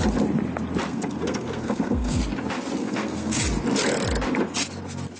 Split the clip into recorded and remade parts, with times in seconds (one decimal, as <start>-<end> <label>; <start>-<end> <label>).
0.0-0.9 recorded; 0.9-2.2 remade; 2.2-2.8 recorded; 2.8-3.4 remade; 3.4-5.2 recorded

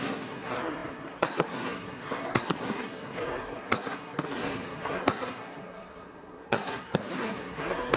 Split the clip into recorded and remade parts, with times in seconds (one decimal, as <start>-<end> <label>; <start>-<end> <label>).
0.0-8.0 remade

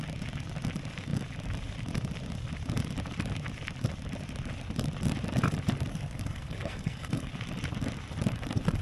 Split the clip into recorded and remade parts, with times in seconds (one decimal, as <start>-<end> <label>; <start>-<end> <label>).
0.0-5.9 recorded; 5.9-7.3 remade; 7.3-8.8 recorded

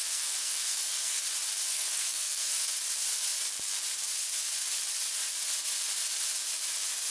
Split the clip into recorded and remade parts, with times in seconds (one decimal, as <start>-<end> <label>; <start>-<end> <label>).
0.0-1.2 remade; 1.2-1.7 recorded; 1.7-2.7 remade; 2.7-7.1 recorded